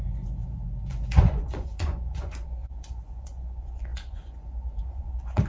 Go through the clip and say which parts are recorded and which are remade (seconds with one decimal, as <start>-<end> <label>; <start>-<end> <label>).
0.0-5.5 remade